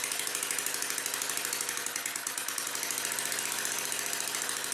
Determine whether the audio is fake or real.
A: real